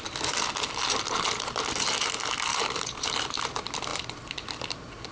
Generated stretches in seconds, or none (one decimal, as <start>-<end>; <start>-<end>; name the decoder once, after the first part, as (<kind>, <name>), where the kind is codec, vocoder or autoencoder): 2.5-3.4 (vocoder, BigVGAN v2)